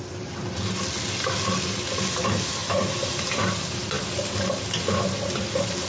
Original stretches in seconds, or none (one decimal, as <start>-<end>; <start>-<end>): 0.0-5.9